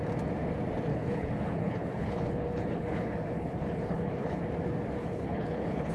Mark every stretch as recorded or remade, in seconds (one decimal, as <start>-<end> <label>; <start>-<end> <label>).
0.0-0.9 recorded; 0.9-4.4 remade; 4.4-5.0 recorded; 5.0-5.9 remade